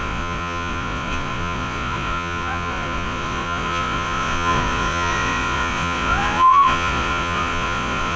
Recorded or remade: remade